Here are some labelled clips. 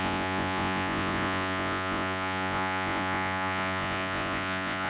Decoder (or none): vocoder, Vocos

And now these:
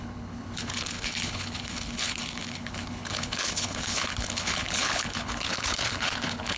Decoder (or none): codec, HILCodec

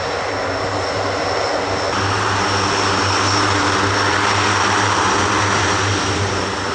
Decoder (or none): none